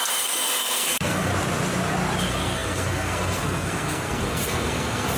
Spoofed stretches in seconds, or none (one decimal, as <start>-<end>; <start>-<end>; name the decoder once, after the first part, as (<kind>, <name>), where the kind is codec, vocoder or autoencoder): 0.0-1.3 (codec, SNAC); 2.2-5.2